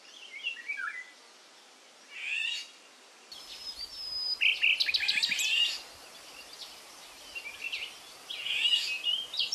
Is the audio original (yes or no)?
yes